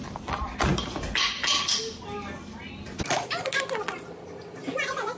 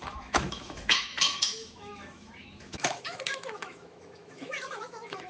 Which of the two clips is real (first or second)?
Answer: first